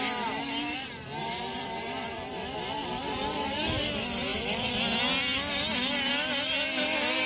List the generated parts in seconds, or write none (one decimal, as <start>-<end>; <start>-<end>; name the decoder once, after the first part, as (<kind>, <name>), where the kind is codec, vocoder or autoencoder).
1.2-3.8 (vocoder, BigVGAN v2); 4.3-4.8